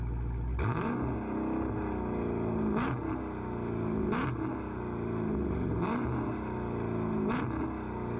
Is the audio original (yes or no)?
yes